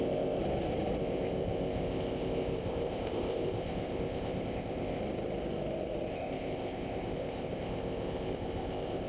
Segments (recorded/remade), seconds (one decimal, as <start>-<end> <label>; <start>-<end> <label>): 0.0-0.4 remade; 0.4-1.0 recorded; 1.0-5.0 remade; 5.0-6.1 recorded; 6.1-9.1 remade